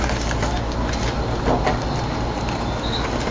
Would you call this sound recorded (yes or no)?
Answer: yes